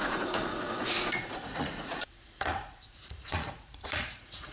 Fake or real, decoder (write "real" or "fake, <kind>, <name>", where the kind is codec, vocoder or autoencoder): fake, vocoder, Vocos